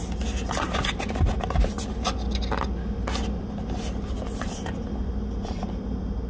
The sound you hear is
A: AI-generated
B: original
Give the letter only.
B